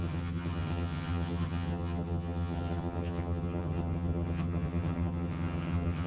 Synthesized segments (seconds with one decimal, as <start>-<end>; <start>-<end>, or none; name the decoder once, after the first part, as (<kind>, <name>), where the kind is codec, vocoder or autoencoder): 0.0-6.1 (vocoder, HiFi-GAN)